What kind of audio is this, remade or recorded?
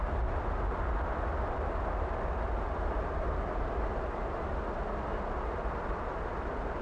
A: recorded